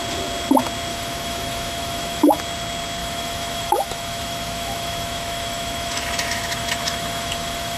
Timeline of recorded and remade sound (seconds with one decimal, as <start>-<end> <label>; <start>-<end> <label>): 0.0-0.9 recorded; 0.9-2.4 remade; 2.4-3.0 recorded; 3.0-7.8 remade